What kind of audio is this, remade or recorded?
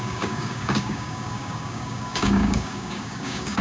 remade